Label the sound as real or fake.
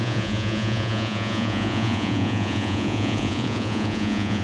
fake